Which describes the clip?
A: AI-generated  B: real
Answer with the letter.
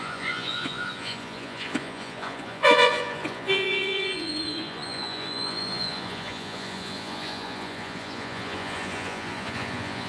A